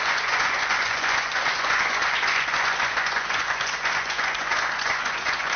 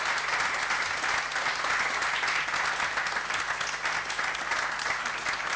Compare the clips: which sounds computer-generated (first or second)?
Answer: first